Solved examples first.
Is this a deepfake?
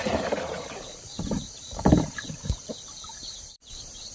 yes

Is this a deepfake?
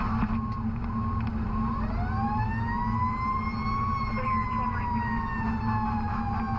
no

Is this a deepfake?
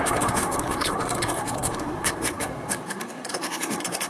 yes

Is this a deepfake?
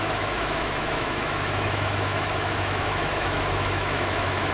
yes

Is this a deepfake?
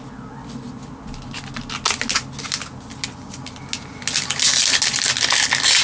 no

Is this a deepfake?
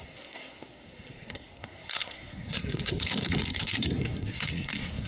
yes